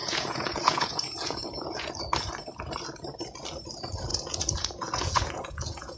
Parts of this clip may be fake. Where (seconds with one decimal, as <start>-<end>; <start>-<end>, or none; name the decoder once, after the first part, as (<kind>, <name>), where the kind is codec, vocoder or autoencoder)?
0.0-1.9 (vocoder, Vocos); 4.1-6.0